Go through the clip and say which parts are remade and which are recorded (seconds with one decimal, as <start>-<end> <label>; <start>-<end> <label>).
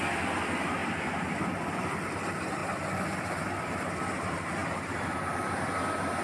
0.0-0.8 recorded; 0.8-1.4 remade; 1.4-2.6 recorded; 2.6-3.5 remade; 3.5-6.2 recorded